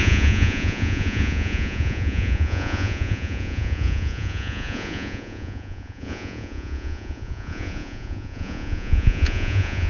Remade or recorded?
remade